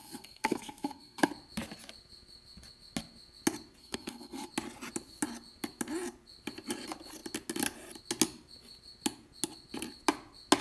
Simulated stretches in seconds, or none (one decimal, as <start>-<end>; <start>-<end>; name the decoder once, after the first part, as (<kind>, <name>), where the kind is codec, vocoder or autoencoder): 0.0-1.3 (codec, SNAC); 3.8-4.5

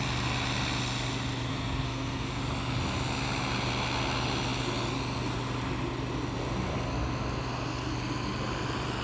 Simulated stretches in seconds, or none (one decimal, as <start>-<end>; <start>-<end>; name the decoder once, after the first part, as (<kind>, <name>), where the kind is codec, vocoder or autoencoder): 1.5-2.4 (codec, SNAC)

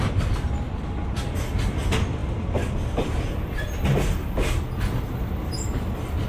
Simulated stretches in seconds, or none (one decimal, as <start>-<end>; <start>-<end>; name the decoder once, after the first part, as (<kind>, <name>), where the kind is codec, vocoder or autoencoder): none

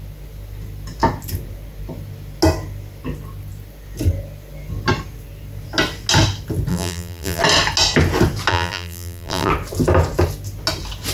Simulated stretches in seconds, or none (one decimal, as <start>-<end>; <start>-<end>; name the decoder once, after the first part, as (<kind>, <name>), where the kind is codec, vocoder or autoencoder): 6.7-7.4 (vocoder, BigVGAN v2); 8.5-9.5

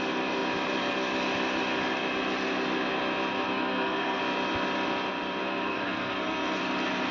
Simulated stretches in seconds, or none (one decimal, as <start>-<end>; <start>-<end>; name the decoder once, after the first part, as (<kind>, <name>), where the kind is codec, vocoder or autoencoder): 3.3-4.2 (codec, SNAC); 5.4-6.6

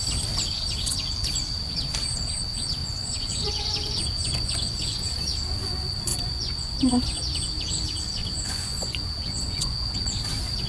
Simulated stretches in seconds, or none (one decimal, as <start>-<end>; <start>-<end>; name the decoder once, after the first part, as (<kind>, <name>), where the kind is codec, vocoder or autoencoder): 2.8-5.0 (vocoder, Vocos); 6.1-7.6; 8.2-10.2